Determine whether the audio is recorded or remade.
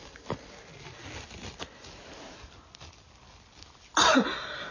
recorded